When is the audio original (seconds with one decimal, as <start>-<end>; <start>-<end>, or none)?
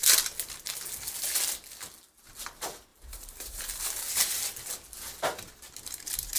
0.0-2.9; 4.6-6.4